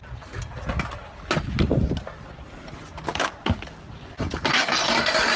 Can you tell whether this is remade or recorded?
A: recorded